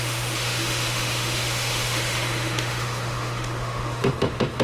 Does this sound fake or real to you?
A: fake